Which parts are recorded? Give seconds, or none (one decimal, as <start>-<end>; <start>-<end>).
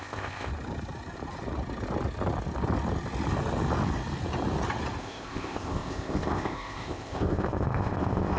0.5-5.0